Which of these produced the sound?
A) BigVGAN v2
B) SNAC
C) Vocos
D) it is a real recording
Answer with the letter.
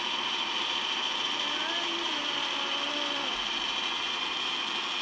A